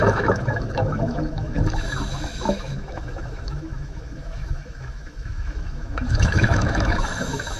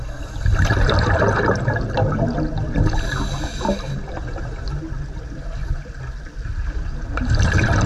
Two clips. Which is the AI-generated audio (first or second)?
first